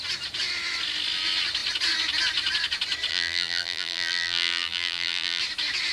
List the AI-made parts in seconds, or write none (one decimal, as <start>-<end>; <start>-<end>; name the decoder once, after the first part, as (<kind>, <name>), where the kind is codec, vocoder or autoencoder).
3.1-5.4 (vocoder, BigVGAN v2)